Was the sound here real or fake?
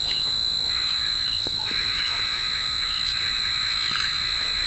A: fake